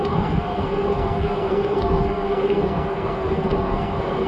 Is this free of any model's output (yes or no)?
no